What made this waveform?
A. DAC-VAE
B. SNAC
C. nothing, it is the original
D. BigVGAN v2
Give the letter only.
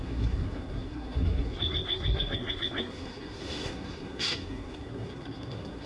B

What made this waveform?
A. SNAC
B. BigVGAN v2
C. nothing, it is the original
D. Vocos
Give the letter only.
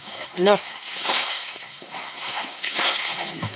A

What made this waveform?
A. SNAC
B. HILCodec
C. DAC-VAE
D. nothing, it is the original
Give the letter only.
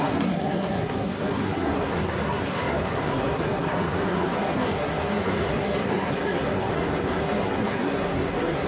A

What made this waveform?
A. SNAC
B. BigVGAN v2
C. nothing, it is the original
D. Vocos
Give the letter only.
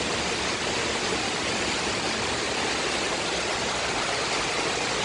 C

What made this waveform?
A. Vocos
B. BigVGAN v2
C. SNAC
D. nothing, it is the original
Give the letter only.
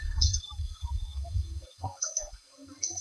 C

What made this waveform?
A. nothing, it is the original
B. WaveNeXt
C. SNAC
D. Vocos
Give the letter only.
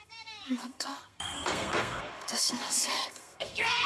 C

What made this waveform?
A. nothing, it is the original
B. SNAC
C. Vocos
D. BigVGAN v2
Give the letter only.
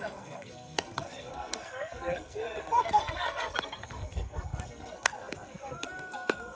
B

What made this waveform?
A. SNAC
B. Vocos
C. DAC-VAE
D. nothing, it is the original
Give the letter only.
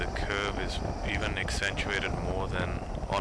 D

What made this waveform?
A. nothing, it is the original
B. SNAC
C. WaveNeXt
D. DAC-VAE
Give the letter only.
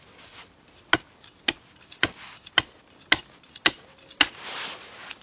A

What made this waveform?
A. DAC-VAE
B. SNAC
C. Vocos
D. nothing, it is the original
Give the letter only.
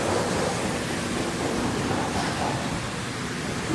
D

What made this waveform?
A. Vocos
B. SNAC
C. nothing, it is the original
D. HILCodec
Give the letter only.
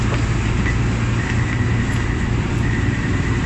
C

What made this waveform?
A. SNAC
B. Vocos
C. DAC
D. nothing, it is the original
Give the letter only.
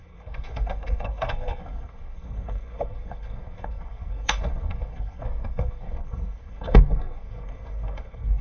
A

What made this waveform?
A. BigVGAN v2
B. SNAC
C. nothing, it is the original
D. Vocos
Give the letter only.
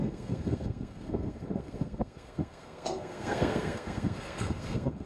B